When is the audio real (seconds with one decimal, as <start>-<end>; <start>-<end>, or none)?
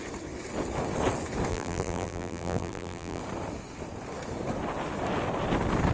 0.0-1.5; 3.2-5.9